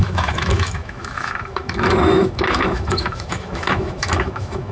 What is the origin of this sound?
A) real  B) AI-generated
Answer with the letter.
B